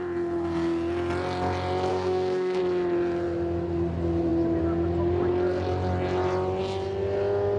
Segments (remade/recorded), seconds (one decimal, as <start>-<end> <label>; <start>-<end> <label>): 0.0-1.9 recorded; 1.9-2.6 remade; 2.6-7.6 recorded